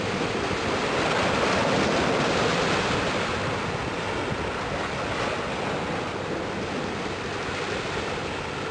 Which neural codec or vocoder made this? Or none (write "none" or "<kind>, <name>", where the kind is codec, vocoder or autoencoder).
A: none